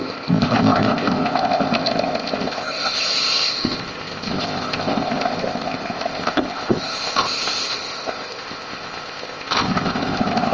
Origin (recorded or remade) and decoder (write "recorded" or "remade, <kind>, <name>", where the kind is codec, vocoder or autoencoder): remade, codec, ZipCodec